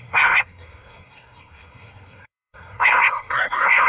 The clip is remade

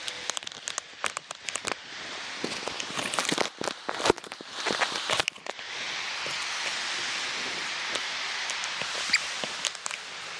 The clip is recorded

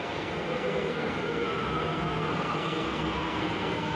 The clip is remade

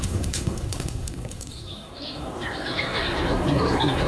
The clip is remade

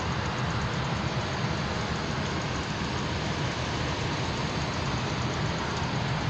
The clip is recorded